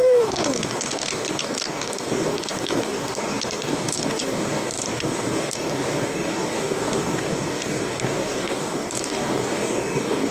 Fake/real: fake